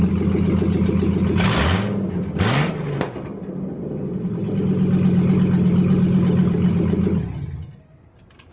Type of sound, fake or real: real